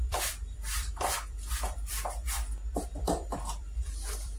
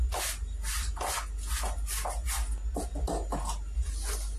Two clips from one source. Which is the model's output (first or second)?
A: first